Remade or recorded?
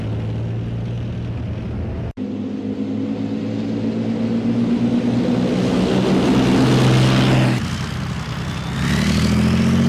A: recorded